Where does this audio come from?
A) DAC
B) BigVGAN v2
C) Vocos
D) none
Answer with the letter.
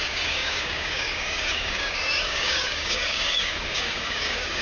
A